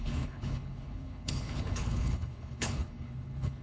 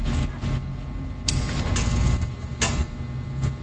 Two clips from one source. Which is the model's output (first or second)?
first